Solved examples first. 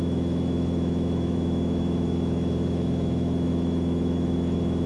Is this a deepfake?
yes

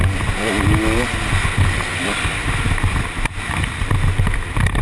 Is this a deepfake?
no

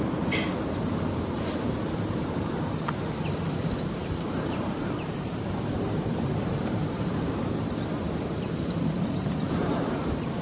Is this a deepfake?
yes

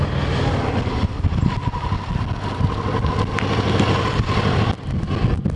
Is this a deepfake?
no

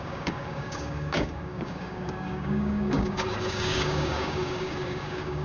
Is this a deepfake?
yes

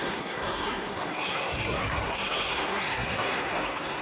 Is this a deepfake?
yes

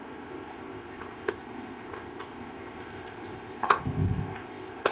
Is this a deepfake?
yes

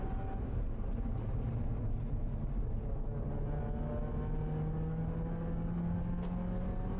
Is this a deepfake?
no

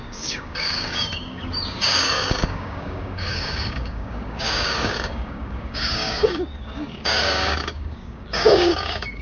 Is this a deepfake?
yes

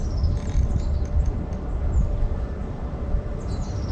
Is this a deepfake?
yes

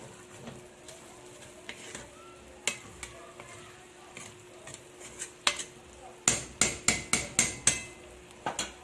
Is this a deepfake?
no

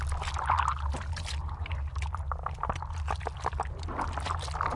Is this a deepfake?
no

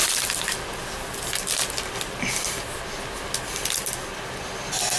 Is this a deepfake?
no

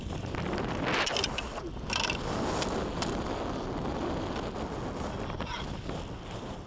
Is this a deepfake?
no